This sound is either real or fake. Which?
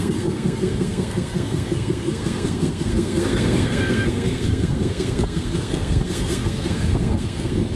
fake